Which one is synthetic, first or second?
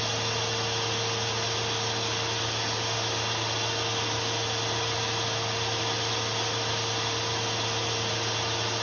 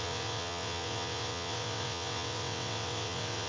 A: second